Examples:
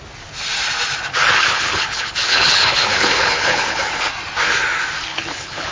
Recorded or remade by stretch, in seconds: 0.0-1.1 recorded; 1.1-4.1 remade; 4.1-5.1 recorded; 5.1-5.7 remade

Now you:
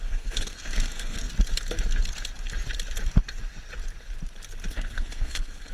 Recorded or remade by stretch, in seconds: 0.0-1.3 remade; 1.3-4.7 recorded; 4.7-5.7 remade

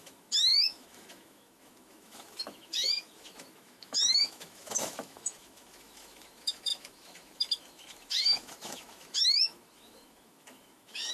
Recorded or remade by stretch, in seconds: 0.0-11.1 remade